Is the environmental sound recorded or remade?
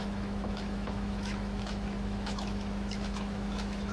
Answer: remade